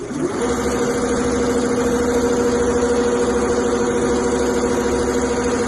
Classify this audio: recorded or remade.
recorded